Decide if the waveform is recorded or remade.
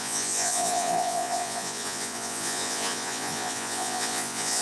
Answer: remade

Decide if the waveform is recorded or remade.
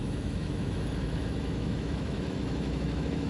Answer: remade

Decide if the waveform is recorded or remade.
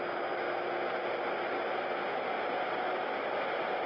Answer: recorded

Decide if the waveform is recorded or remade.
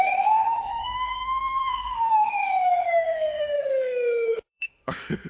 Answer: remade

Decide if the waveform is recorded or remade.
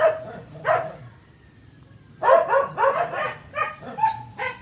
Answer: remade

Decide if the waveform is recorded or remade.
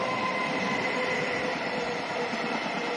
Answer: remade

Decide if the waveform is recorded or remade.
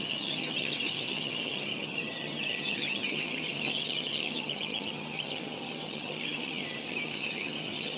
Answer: remade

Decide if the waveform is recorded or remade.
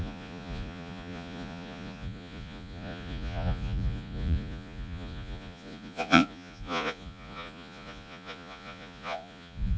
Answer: remade